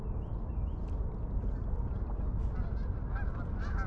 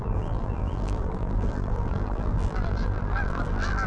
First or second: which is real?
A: first